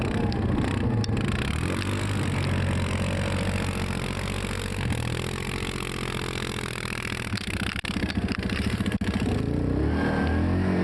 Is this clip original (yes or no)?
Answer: yes